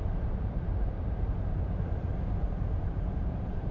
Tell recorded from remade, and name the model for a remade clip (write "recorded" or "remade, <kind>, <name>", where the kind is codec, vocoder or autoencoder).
remade, vocoder, BigVGAN v2